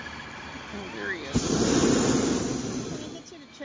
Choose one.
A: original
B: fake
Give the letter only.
A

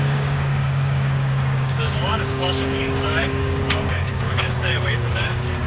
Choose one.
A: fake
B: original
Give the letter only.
A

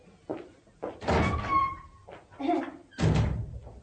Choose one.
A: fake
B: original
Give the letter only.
B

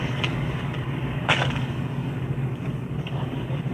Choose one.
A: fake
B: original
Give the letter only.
A